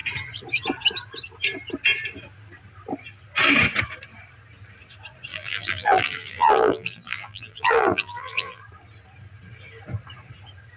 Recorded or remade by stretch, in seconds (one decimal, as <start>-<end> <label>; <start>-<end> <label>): 0.0-5.3 recorded; 5.3-8.6 remade; 8.6-10.8 recorded